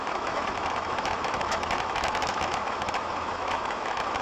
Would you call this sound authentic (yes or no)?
no